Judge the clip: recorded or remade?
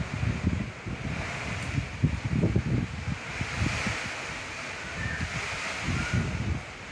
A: recorded